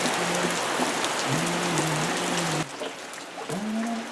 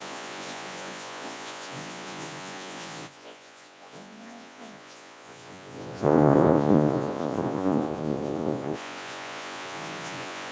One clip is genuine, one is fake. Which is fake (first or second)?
second